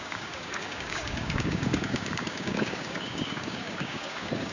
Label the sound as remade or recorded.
remade